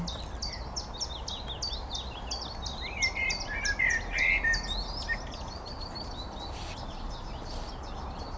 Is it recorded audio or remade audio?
recorded